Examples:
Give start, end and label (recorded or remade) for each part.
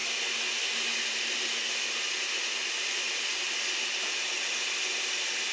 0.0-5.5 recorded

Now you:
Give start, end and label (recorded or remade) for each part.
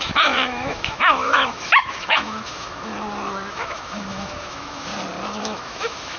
0.0-2.9 remade; 2.9-3.5 recorded; 3.5-4.9 remade; 4.9-5.4 recorded; 5.4-6.2 remade